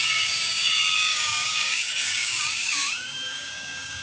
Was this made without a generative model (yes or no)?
no